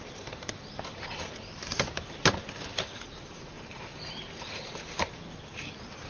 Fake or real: fake